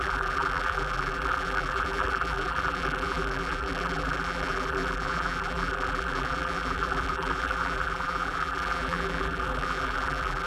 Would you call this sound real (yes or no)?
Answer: no